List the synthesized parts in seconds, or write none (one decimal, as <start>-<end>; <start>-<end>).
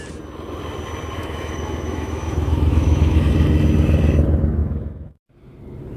1.2-3.3; 4.6-5.2